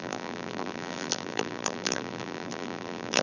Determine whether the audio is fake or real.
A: fake